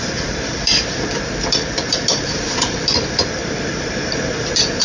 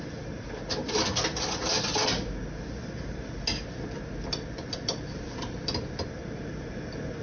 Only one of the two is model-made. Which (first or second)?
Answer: first